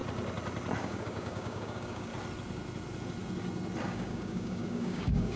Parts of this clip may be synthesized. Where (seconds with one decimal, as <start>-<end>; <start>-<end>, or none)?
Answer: 0.8-2.1; 3.8-5.4